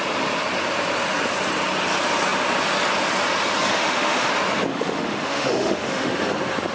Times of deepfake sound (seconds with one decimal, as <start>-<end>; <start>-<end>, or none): 3.7-4.3; 4.7-6.1